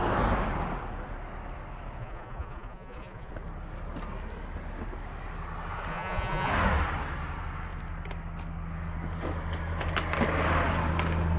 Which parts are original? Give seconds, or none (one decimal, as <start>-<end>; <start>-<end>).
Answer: 0.0-2.0; 3.3-5.9; 6.5-11.4